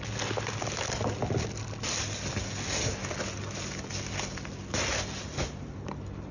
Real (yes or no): yes